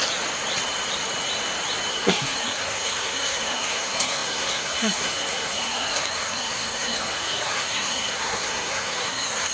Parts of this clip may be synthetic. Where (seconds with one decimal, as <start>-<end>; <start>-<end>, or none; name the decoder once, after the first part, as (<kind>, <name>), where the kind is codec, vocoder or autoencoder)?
1.9-9.5 (codec, SNAC)